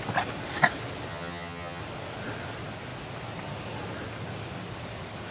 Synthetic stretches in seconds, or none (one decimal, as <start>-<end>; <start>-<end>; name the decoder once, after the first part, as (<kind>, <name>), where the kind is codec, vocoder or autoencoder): 1.1-1.8 (vocoder, HiFi-GAN)